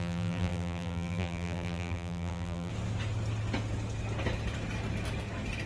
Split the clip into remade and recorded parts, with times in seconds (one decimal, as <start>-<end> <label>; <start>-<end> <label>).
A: 0.0-2.7 remade; 2.7-5.7 recorded